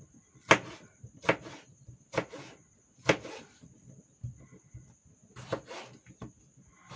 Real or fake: real